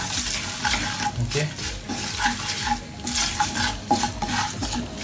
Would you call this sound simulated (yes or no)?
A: no